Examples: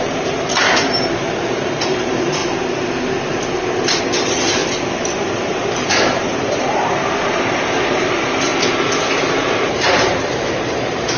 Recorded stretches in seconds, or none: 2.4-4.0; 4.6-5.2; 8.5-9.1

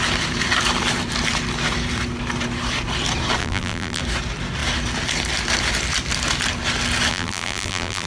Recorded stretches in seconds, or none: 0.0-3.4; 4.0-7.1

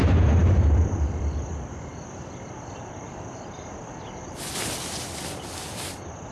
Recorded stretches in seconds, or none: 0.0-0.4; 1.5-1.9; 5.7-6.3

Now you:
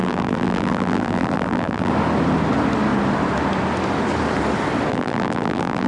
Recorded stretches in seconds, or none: 1.9-4.9

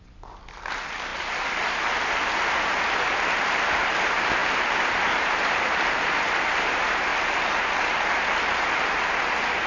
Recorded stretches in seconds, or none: 0.0-4.4; 5.8-9.7

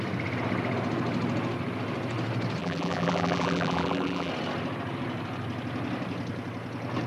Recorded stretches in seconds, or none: 0.0-2.6; 4.3-7.1

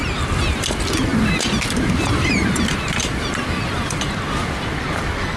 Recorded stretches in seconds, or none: none